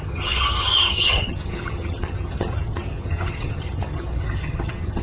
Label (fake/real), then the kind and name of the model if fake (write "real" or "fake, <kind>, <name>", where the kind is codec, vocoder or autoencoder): fake, vocoder, HiFi-GAN